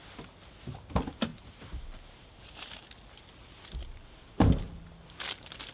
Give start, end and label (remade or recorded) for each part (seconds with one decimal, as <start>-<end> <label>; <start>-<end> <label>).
0.0-1.3 recorded; 1.3-3.3 remade; 3.3-5.7 recorded